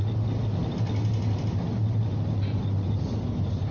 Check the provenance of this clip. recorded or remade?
recorded